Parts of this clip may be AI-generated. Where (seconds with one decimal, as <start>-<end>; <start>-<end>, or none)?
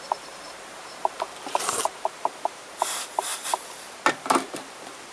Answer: 0.0-3.3; 4.1-5.1